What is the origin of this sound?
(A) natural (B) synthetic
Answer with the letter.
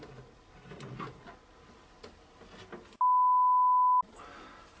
A